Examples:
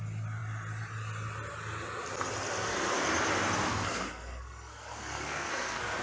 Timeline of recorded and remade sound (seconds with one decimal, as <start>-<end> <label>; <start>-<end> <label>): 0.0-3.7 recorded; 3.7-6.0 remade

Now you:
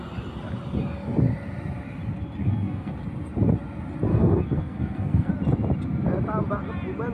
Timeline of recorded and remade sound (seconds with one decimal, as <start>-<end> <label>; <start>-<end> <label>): 0.0-2.4 recorded; 2.4-2.9 remade; 2.9-4.1 recorded; 4.1-5.3 remade; 5.3-7.1 recorded

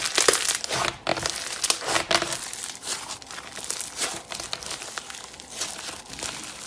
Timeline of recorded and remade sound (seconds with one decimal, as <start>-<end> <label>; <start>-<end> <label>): 0.0-6.7 recorded

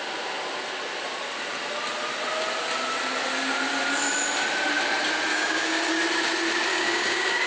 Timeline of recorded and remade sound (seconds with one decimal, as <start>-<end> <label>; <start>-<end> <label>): 0.0-5.3 recorded; 5.3-5.9 remade; 5.9-6.7 recorded; 6.7-7.5 remade

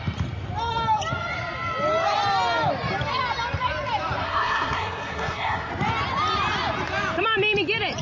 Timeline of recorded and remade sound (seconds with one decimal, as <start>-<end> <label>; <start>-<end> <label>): 0.0-4.2 recorded; 4.2-5.7 remade; 5.7-8.0 recorded

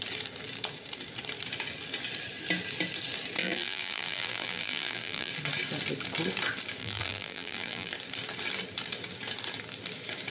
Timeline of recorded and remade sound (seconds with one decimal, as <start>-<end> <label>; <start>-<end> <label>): 0.0-3.4 recorded; 3.4-5.3 remade; 5.3-6.8 recorded; 6.8-7.9 remade; 7.9-10.3 recorded